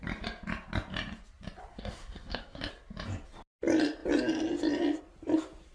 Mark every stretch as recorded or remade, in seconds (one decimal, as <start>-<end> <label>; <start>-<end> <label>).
0.0-1.7 recorded; 1.7-2.7 remade; 2.7-5.7 recorded